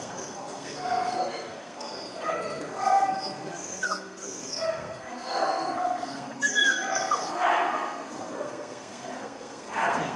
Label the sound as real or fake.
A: fake